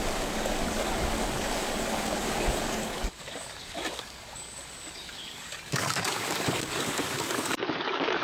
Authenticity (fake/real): fake